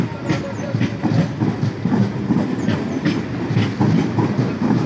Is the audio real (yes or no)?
yes